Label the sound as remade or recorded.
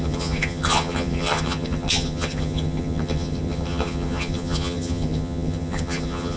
remade